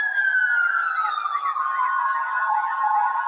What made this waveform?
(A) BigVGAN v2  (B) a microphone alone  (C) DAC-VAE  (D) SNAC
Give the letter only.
B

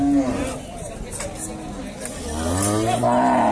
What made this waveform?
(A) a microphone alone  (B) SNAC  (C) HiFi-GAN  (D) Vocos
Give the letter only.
A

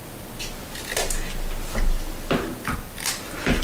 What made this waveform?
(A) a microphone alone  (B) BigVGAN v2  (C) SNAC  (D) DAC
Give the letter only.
A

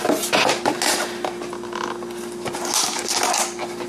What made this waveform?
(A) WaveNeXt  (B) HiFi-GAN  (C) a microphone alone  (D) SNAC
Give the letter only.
C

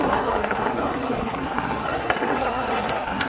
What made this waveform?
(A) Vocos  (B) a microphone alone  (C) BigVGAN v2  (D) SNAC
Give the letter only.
D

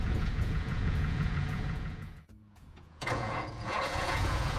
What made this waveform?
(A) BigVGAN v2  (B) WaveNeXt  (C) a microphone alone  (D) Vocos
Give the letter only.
D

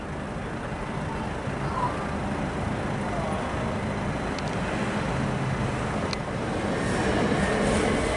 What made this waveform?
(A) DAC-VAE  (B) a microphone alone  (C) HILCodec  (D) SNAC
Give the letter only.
B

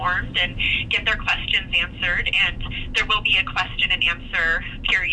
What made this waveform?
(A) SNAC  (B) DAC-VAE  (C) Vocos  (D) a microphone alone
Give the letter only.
D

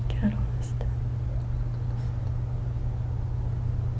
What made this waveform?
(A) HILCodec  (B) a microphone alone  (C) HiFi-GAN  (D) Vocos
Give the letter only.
B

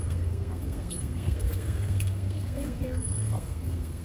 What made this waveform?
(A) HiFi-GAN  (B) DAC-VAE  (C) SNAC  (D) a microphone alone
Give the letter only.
C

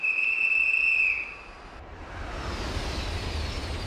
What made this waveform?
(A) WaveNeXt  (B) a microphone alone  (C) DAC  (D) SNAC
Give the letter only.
B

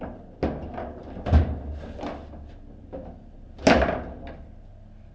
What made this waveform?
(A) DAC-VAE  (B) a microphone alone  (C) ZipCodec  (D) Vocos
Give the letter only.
B